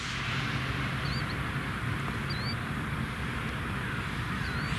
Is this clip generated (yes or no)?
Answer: no